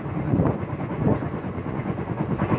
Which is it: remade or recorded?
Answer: remade